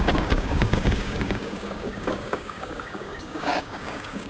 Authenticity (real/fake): fake